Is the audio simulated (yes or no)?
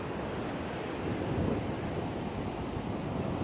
no